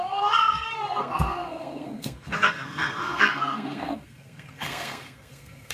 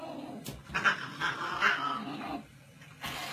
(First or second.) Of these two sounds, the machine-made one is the first